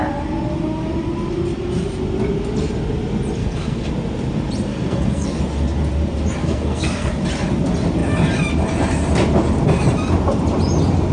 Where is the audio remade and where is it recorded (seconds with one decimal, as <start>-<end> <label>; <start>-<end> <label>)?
0.0-3.4 recorded; 3.4-3.9 remade; 3.9-4.7 recorded; 4.7-5.4 remade; 5.4-6.4 recorded; 6.4-7.1 remade; 7.1-11.1 recorded